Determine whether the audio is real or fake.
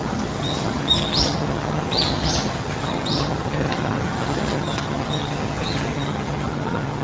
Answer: fake